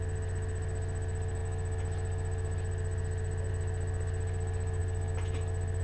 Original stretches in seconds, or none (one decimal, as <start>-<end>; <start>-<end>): 0.0-5.8